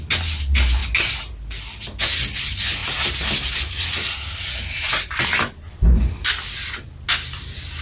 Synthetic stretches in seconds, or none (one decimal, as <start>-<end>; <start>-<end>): none